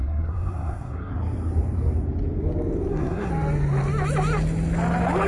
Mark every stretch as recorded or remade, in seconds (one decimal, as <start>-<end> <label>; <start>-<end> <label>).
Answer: 0.0-1.1 remade; 1.1-2.9 recorded; 2.9-3.3 remade; 3.3-5.3 recorded

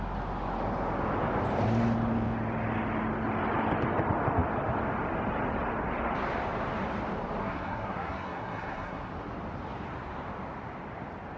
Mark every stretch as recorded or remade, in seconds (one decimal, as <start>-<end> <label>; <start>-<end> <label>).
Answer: 0.0-7.4 recorded; 7.4-9.1 remade; 9.1-11.4 recorded

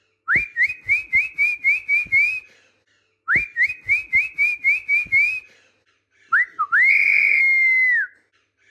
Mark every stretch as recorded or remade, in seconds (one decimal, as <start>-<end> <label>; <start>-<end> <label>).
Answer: 0.0-6.9 recorded; 6.9-7.4 remade; 7.4-8.7 recorded

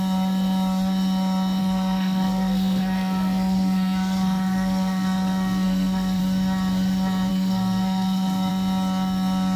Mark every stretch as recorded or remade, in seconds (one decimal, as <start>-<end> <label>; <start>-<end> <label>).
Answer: 0.0-1.6 recorded; 1.6-6.2 remade; 6.2-7.3 recorded; 7.3-8.5 remade; 8.5-9.6 recorded

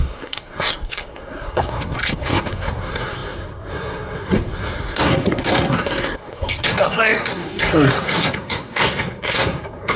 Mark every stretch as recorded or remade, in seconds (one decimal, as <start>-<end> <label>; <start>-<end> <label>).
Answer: 0.0-10.0 remade

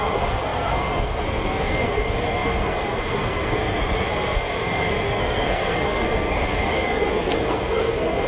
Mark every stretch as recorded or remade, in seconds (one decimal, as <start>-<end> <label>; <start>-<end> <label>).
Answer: 0.0-8.3 remade

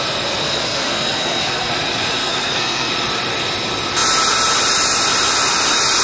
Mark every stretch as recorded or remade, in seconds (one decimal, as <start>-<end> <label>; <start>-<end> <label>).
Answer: 0.0-0.4 recorded; 0.4-1.7 remade; 1.7-2.2 recorded; 2.2-2.9 remade; 2.9-6.0 recorded

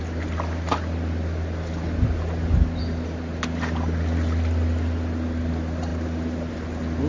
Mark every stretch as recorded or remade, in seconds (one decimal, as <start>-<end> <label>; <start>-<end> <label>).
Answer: 0.0-7.1 recorded